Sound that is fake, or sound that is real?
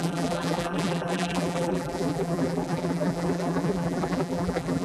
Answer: fake